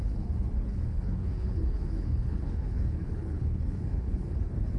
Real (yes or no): no